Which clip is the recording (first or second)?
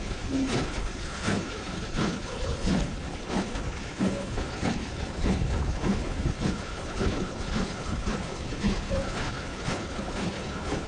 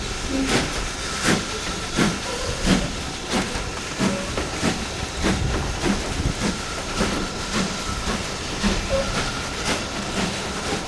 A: second